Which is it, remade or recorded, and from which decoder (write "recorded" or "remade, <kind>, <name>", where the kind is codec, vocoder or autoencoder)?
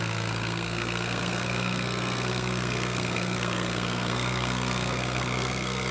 remade, codec, SNAC